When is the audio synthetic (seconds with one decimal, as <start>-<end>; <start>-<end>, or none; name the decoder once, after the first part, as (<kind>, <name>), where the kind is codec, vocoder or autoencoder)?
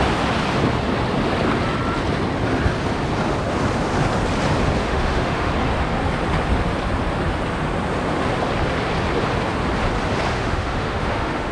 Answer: 4.8-5.5 (autoencoder, DAC-VAE); 10.3-11.5